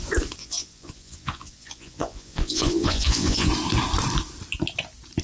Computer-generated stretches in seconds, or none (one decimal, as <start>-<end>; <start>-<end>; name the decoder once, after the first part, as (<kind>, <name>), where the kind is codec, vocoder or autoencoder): 0.4-3.5 (vocoder, Vocos)

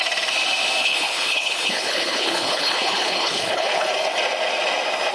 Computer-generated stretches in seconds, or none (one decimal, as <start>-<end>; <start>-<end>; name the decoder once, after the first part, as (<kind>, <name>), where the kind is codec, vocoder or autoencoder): 0.8-3.9 (codec, HILCodec)